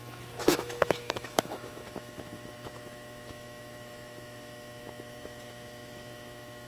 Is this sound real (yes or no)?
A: no